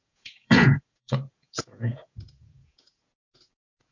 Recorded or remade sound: remade